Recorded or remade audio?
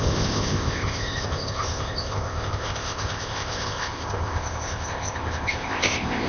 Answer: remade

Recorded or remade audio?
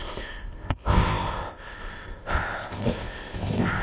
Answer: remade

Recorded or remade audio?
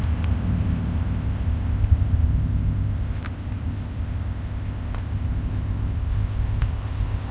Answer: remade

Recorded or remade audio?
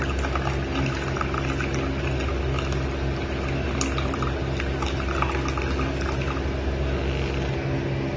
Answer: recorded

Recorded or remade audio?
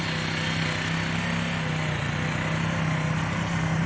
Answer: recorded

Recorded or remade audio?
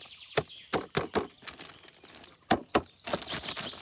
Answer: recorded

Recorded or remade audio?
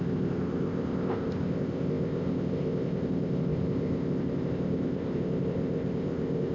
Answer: remade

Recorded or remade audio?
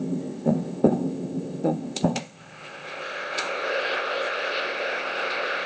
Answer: remade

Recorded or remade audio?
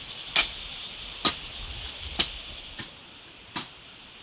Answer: recorded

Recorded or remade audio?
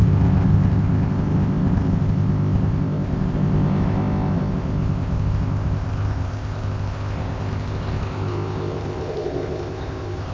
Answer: remade